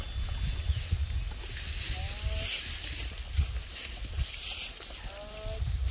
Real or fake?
real